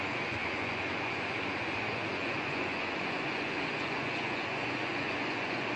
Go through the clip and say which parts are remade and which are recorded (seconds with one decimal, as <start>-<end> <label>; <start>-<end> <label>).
0.0-5.8 remade